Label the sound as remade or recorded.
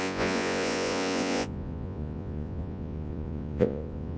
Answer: remade